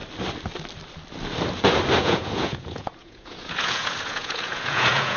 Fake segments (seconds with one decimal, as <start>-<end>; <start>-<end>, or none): 2.0-5.2